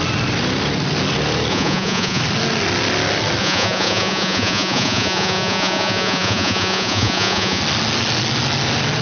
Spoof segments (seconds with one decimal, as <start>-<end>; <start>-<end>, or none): 1.5-2.2; 3.4-7.6